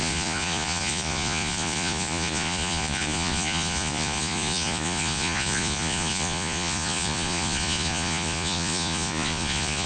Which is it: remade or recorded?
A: remade